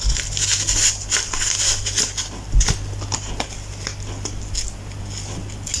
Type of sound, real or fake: real